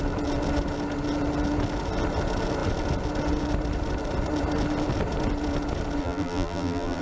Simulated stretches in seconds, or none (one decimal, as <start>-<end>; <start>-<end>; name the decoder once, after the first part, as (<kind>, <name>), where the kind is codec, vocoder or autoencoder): 6.0-7.0 (vocoder, BigVGAN v2)